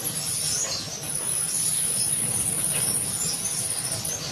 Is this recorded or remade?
recorded